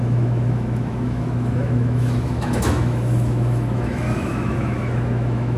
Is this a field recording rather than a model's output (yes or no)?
no